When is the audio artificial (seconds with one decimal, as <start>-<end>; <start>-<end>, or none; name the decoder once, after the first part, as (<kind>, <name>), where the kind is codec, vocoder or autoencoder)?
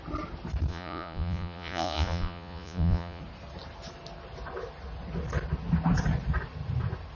0.7-3.2 (vocoder, Vocos)